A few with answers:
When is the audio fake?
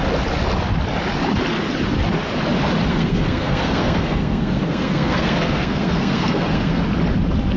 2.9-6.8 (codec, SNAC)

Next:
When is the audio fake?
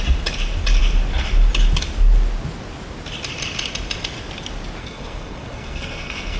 4.8-6.4 (codec, SNAC)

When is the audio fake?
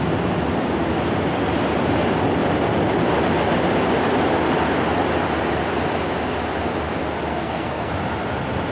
7.0-7.9 (codec, SNAC)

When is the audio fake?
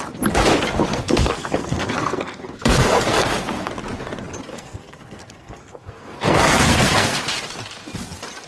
0.9-3.7 (codec, SNAC); 4.5-7.2